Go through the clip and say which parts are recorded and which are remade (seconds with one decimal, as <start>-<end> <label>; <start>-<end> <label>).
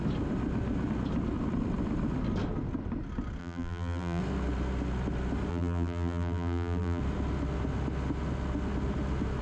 0.0-3.4 recorded; 3.4-4.2 remade; 4.2-5.5 recorded; 5.5-7.0 remade; 7.0-9.4 recorded